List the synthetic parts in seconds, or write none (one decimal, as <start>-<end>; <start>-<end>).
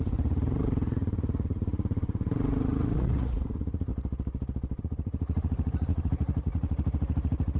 0.0-3.9; 4.8-7.6